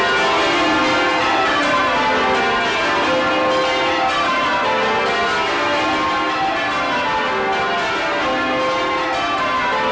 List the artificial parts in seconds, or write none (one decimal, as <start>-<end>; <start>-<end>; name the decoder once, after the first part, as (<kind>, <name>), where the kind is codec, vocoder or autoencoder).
1.2-1.8 (vocoder, BigVGAN v2)